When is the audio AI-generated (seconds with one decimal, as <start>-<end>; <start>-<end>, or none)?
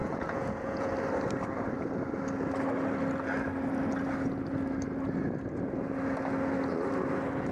0.0-0.9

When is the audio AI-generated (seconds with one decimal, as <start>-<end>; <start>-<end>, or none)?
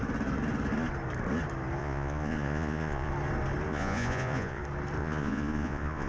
1.8-3.1; 3.7-4.6; 5.0-6.1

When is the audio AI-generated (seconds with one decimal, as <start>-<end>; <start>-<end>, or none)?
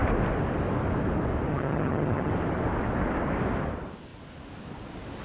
1.5-2.3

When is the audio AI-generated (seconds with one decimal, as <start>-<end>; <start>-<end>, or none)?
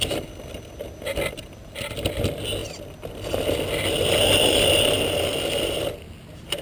1.6-2.1